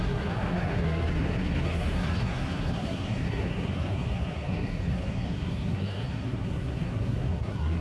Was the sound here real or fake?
fake